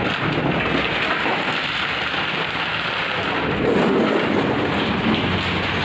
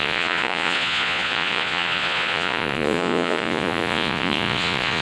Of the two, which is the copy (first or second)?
second